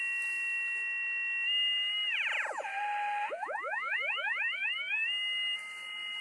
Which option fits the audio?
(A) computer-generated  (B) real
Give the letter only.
B